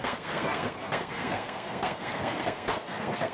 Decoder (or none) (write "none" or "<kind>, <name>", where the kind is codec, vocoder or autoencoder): codec, SNAC